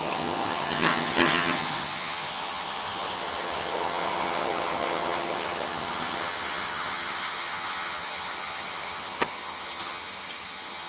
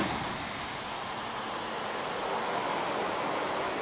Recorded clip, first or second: second